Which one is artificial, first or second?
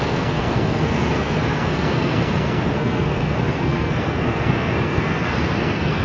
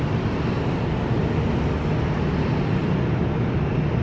first